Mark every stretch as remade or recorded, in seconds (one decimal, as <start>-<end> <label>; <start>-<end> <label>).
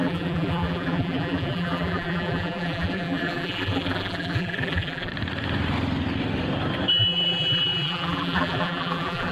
0.0-5.1 remade; 5.1-6.9 recorded; 6.9-9.3 remade